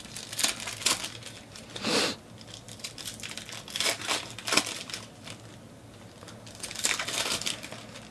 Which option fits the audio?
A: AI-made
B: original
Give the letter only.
B